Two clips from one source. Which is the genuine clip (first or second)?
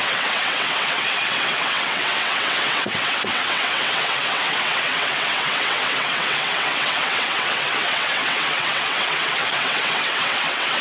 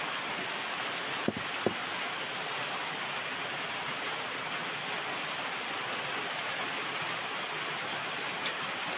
second